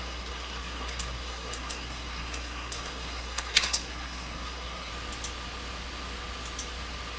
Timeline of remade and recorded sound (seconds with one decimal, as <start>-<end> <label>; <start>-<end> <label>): 0.0-4.9 remade; 4.9-7.2 recorded